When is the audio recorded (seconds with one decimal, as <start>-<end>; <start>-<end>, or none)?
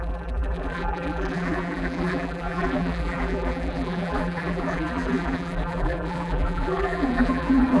none